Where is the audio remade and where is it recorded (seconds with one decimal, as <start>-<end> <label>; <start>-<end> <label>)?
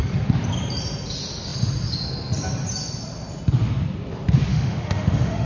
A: 0.0-4.5 recorded; 4.5-5.5 remade